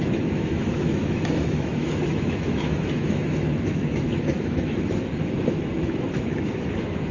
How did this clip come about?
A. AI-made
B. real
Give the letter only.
A